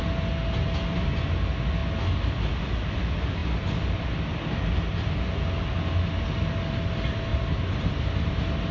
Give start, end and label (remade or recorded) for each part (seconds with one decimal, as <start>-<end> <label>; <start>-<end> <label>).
0.0-8.7 recorded